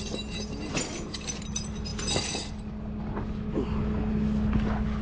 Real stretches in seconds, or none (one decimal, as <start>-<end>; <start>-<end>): 0.0-5.0